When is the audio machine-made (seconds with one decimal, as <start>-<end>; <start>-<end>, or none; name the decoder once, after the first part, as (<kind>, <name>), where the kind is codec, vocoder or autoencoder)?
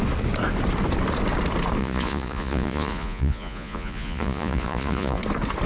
1.8-5.2 (vocoder, Vocos)